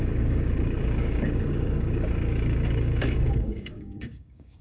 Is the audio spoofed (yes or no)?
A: yes